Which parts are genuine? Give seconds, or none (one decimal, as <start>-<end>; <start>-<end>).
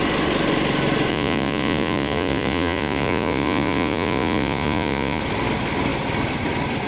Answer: 0.0-1.1; 5.2-6.9